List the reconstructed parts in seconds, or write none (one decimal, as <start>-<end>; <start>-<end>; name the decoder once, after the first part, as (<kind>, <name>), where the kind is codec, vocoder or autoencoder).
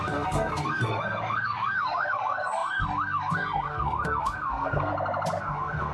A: 0.0-4.9 (codec, SNAC); 5.4-5.9